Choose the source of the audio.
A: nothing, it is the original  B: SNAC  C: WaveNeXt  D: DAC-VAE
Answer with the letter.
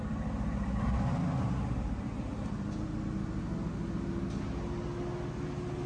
A